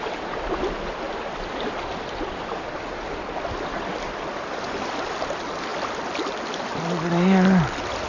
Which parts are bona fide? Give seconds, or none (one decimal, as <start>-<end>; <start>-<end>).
0.0-8.1